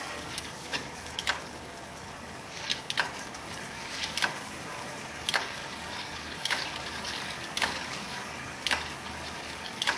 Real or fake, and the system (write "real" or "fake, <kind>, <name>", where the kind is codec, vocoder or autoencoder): fake, codec, DAC